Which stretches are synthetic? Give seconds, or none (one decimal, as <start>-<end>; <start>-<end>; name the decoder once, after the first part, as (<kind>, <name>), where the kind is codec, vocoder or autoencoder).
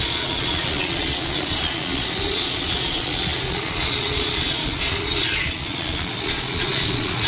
0.0-7.3 (vocoder, Vocos)